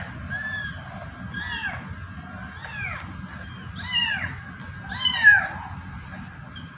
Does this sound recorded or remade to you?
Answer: recorded